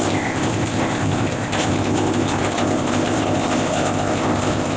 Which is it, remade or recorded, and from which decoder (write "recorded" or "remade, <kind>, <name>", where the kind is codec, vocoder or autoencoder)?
remade, codec, ZipCodec